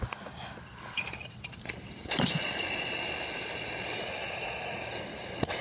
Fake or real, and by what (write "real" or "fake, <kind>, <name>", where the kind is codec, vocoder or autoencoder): real